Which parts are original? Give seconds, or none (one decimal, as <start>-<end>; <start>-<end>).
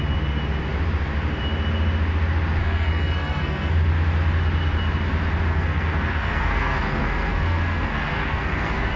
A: 0.0-2.6; 3.7-5.5